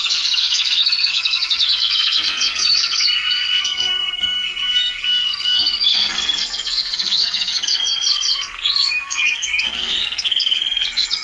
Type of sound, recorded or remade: remade